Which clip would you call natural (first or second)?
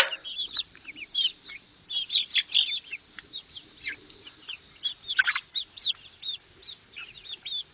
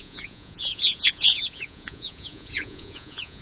first